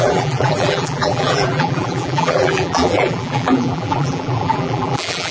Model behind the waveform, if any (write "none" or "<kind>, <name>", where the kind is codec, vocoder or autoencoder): vocoder, BigVGAN v2